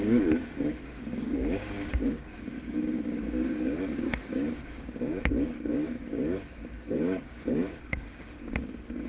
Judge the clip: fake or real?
fake